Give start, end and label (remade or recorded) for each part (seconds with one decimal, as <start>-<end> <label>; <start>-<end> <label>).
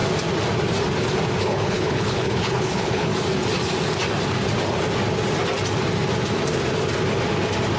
0.0-1.4 recorded; 1.4-3.1 remade; 3.1-7.8 recorded